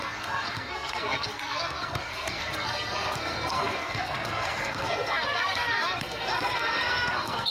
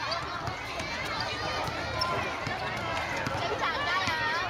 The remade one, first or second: first